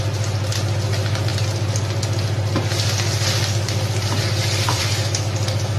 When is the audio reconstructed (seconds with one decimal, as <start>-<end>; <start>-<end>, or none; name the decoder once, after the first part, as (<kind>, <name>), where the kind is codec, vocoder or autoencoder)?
none